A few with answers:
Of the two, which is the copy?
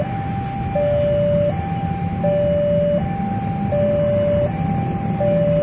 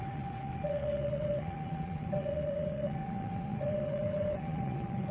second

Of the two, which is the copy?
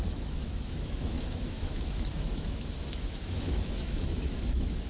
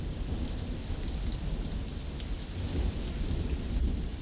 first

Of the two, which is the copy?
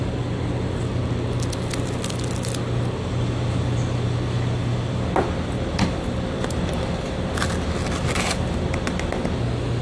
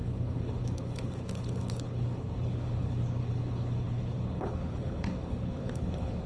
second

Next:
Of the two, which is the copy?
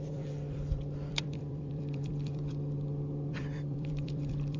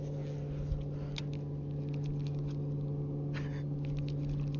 first